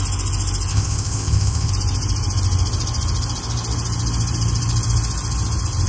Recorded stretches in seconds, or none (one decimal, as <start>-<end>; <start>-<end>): 0.0-0.7; 1.7-5.9